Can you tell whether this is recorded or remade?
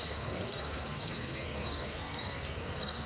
remade